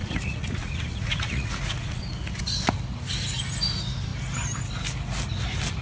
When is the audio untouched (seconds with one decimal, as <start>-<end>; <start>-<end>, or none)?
2.0-5.8